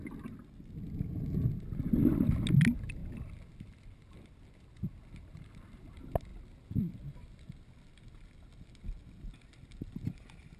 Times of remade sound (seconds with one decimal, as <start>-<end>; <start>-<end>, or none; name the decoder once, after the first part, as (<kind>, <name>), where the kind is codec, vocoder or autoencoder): none